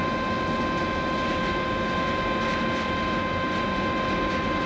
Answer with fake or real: real